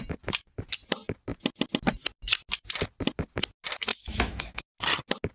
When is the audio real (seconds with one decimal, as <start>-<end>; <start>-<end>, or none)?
0.0-3.9; 4.6-5.3